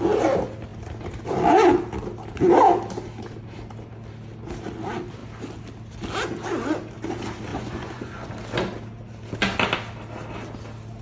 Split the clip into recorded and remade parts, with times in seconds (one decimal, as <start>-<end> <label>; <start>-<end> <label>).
0.0-7.5 recorded; 7.5-8.3 remade; 8.3-11.0 recorded